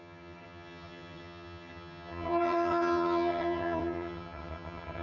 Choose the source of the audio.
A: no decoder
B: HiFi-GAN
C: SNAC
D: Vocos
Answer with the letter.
B